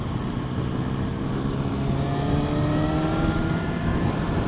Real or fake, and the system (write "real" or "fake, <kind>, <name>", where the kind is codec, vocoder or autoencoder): real